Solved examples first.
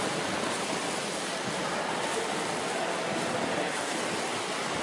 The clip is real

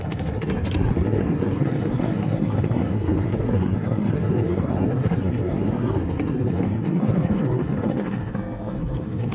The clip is fake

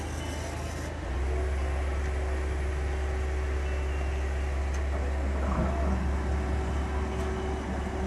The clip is real